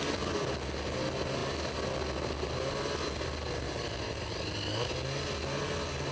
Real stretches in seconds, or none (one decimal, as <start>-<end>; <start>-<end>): 0.0-6.1

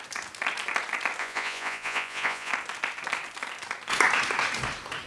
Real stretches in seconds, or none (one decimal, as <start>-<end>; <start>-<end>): 0.0-1.2; 2.5-5.1